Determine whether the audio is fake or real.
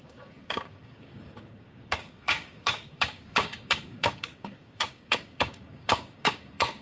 fake